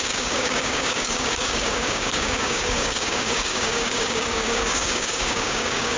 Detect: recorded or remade remade